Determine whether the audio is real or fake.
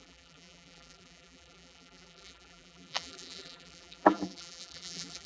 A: fake